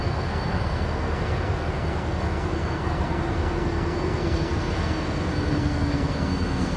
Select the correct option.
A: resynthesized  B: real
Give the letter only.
A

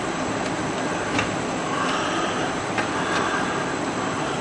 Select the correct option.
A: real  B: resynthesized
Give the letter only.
B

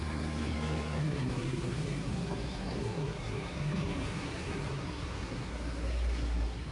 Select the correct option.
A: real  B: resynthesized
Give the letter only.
B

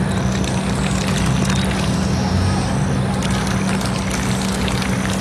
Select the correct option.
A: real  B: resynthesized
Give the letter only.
A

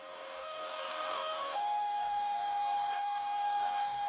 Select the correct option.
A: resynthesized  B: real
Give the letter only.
A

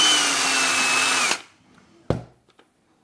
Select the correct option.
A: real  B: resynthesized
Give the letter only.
A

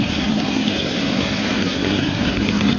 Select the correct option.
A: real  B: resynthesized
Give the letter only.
B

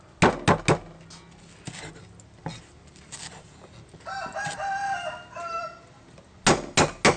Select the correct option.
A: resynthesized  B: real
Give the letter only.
B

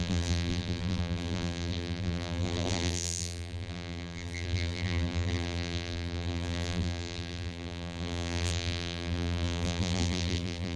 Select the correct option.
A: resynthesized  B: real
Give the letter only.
A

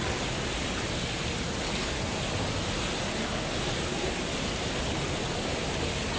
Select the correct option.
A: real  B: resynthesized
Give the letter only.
A